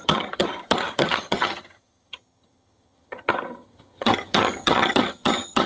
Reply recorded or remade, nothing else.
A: remade